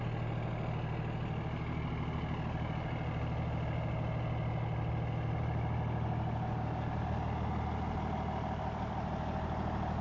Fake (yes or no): no